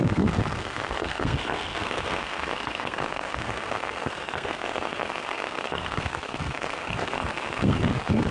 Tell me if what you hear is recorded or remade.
remade